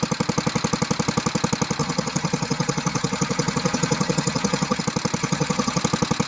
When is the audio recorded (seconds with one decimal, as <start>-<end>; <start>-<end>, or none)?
0.0-1.8; 4.8-5.2; 5.8-6.3